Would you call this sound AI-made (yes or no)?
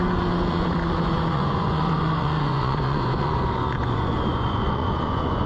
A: yes